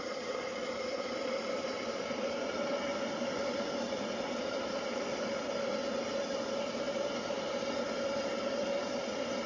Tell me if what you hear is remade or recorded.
recorded